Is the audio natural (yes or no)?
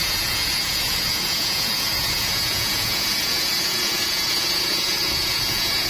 no